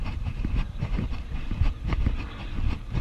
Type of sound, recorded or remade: remade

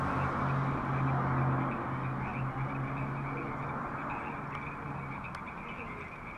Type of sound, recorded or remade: recorded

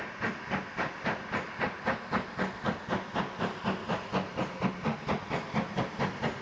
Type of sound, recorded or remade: recorded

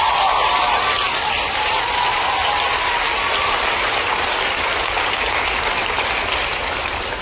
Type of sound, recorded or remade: remade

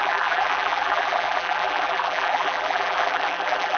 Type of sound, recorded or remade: remade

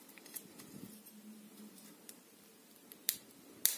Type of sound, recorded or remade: recorded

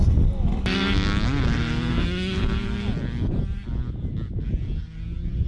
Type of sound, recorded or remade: recorded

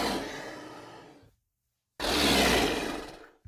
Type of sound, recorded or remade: recorded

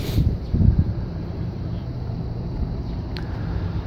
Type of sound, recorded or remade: remade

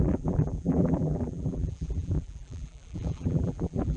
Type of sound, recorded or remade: remade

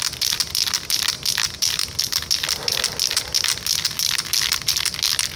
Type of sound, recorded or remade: recorded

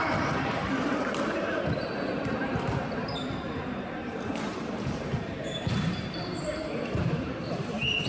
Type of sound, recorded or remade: remade